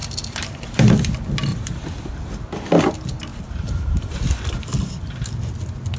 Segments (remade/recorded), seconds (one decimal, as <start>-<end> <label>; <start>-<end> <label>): 0.0-1.0 remade; 1.0-1.5 recorded; 1.5-2.1 remade; 2.1-3.3 recorded; 3.3-5.4 remade; 5.4-6.0 recorded